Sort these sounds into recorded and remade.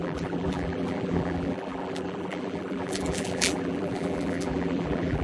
remade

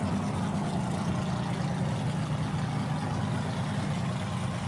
recorded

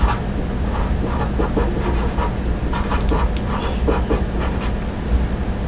recorded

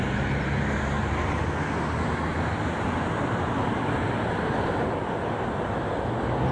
recorded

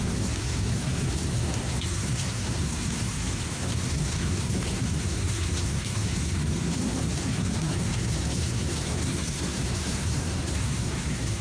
remade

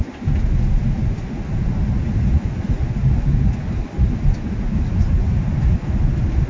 recorded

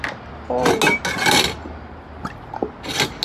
recorded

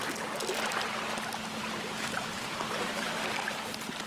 recorded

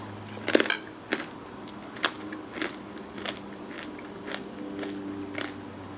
recorded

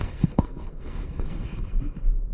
remade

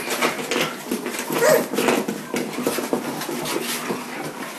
recorded